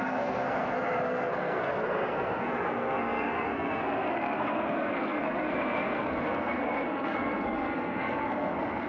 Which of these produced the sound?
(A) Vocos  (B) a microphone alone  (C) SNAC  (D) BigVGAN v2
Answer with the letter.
C